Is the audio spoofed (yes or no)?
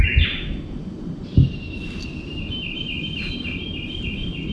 no